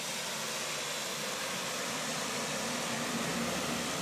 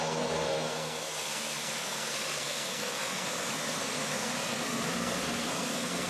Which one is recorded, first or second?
first